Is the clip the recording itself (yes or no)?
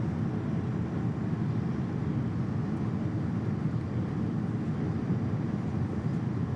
yes